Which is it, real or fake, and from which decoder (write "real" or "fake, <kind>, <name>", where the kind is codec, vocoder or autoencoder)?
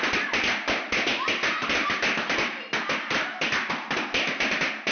fake, vocoder, BigVGAN v2